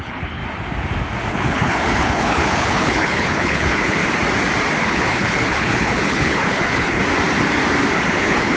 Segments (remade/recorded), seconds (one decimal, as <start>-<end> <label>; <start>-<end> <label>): 0.0-0.4 remade; 0.4-1.3 recorded; 1.3-4.0 remade; 4.0-4.8 recorded; 4.8-7.0 remade; 7.0-8.1 recorded; 8.1-8.6 remade

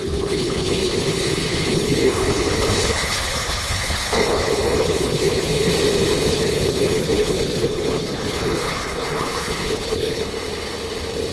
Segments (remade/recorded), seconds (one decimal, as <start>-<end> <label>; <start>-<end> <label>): 0.0-5.7 remade; 5.7-6.3 recorded; 6.3-10.2 remade; 10.2-11.3 recorded

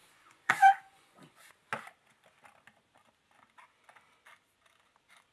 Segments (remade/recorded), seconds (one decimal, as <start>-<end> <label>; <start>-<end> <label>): 0.0-1.5 remade; 1.5-5.3 recorded

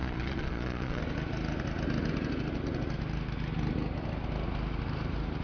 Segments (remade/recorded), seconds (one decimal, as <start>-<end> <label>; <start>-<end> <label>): 0.0-1.0 remade; 1.0-5.4 recorded

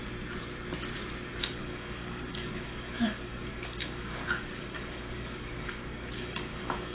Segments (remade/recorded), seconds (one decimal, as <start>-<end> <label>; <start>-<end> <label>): 0.0-1.4 recorded; 1.4-6.9 remade

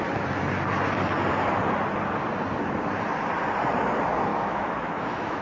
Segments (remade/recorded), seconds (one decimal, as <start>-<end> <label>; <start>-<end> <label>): 0.0-4.3 recorded; 4.3-5.4 remade

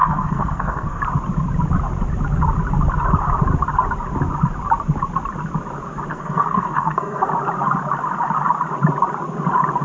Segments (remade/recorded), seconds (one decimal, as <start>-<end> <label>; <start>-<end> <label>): 0.0-1.0 remade; 1.0-6.1 recorded; 6.1-7.3 remade; 7.3-9.8 recorded

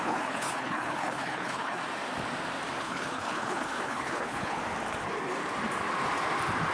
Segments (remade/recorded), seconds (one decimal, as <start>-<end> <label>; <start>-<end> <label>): 0.0-1.8 remade; 1.8-2.8 recorded; 2.8-4.6 remade; 4.6-6.7 recorded